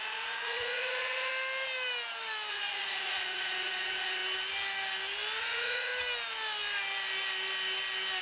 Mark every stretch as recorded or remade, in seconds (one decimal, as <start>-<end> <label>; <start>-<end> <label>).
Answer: 0.0-1.3 remade; 1.3-2.5 recorded; 2.5-4.2 remade; 4.2-5.4 recorded; 5.4-5.9 remade; 5.9-8.2 recorded